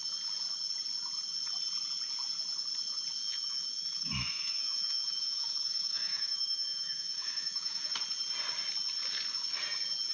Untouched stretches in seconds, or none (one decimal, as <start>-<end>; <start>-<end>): 0.0-3.2; 7.9-10.1